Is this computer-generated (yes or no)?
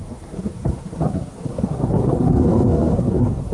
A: yes